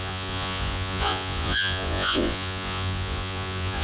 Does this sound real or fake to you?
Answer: fake